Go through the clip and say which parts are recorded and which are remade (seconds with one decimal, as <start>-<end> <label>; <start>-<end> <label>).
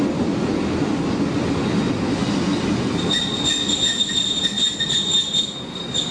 0.0-6.1 recorded